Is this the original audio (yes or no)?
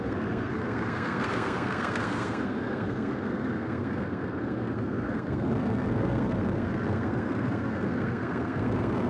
no